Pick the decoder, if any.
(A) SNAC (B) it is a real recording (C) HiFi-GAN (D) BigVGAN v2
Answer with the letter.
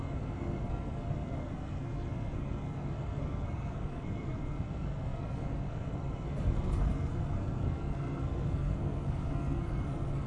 A